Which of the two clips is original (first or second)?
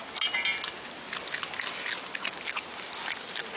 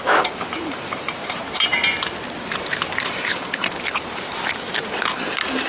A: first